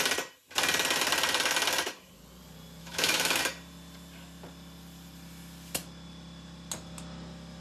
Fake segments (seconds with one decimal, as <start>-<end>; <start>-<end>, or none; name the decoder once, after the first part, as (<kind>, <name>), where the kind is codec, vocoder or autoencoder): 2.8-3.4 (autoencoder, DAC-VAE)